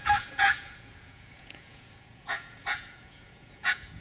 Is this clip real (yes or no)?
no